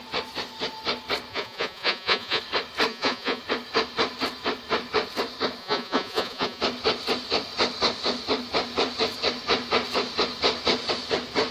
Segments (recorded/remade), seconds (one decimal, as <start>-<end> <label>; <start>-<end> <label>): 0.0-1.3 recorded; 1.3-2.4 remade; 2.4-2.9 recorded; 2.9-3.4 remade; 3.4-5.6 recorded; 5.6-6.6 remade; 6.6-11.5 recorded